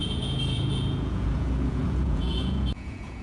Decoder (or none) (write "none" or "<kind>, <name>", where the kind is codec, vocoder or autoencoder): vocoder, Vocos